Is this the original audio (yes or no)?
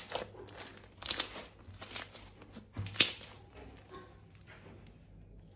yes